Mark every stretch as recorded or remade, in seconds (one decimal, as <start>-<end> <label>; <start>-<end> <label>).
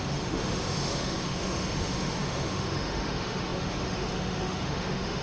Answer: 0.0-5.2 remade